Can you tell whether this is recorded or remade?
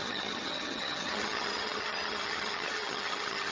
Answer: remade